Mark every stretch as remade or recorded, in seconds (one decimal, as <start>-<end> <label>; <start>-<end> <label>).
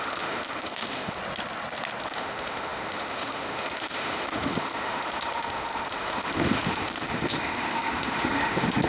0.0-1.2 remade; 1.2-2.0 recorded; 2.0-8.9 remade